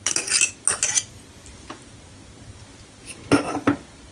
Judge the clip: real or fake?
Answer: real